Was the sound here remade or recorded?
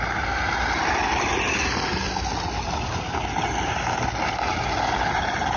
recorded